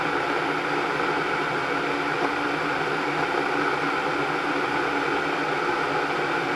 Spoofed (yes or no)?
no